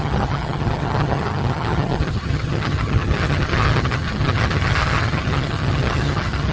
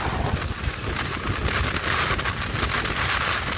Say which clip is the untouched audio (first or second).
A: second